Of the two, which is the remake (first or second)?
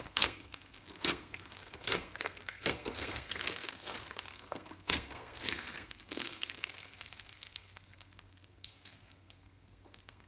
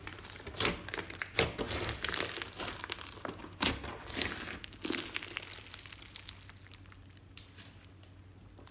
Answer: first